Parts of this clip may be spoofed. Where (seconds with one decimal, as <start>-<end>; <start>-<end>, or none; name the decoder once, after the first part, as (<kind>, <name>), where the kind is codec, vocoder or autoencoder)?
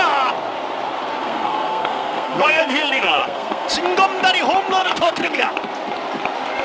1.2-3.7 (codec, SNAC); 4.8-5.5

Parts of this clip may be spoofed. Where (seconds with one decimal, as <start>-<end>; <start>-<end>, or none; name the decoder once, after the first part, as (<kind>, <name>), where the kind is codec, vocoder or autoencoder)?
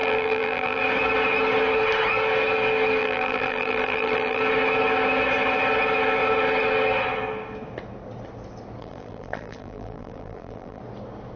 0.0-0.8 (vocoder, BigVGAN v2); 3.0-4.4; 8.8-10.8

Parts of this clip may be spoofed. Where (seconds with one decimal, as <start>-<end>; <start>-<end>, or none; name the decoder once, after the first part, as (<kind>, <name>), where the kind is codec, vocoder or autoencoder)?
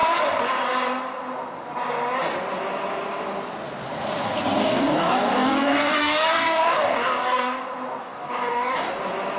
4.6-7.6 (codec, DAC); 8.0-9.0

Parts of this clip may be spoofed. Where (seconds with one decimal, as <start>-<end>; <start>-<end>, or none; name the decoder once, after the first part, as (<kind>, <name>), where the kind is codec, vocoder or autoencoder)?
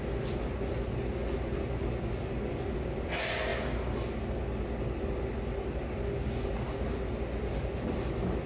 none